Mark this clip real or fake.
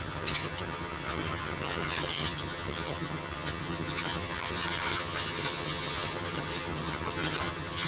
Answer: fake